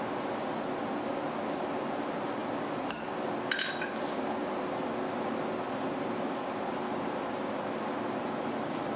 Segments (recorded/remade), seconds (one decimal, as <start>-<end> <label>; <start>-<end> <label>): 0.0-9.0 recorded